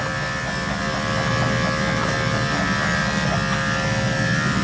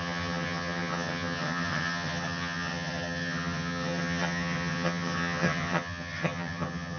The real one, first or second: first